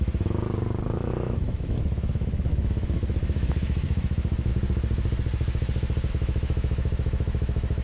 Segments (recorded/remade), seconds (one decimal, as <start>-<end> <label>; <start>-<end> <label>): 0.0-0.4 remade; 0.4-1.1 recorded; 1.1-4.5 remade; 4.5-6.1 recorded; 6.1-7.8 remade